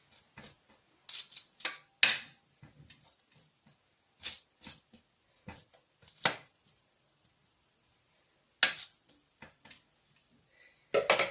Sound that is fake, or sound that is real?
real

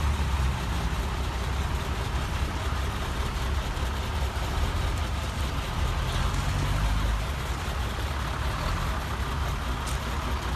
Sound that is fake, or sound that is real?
real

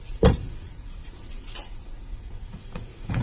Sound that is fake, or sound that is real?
fake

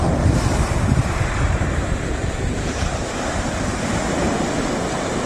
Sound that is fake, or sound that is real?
fake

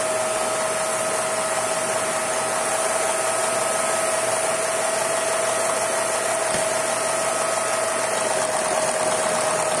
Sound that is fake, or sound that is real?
real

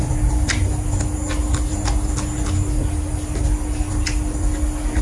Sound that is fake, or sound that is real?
real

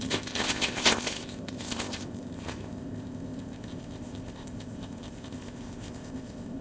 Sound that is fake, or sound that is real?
fake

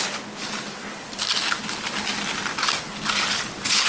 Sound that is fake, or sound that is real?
real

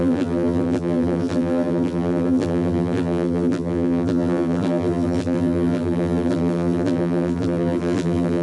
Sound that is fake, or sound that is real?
fake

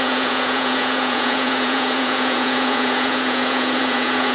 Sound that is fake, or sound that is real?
fake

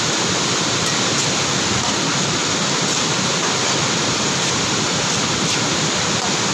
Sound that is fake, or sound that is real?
real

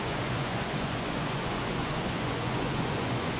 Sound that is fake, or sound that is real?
fake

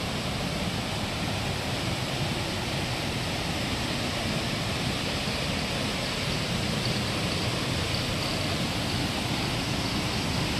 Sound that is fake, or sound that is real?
real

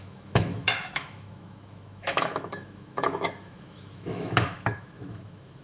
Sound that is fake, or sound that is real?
fake